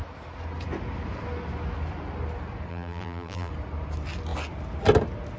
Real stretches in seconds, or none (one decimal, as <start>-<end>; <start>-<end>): 0.0-2.7; 3.5-5.4

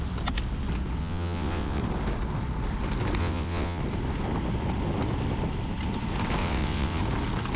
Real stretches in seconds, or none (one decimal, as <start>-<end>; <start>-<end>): 0.0-1.0; 1.8-3.2; 3.8-6.4; 7.0-7.6

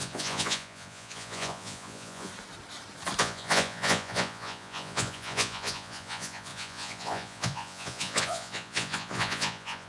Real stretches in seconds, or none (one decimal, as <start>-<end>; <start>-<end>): 2.3-3.2

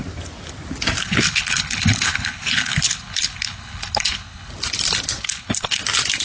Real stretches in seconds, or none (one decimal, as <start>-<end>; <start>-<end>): 0.0-1.0; 4.5-5.2; 5.8-6.2

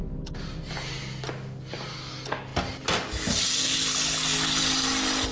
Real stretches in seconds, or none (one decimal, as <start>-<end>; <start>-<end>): 0.0-5.3